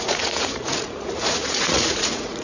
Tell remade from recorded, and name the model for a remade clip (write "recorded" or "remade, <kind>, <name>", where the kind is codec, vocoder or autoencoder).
remade, vocoder, Vocos